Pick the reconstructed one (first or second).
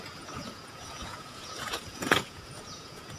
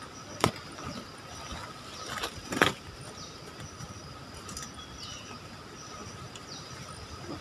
first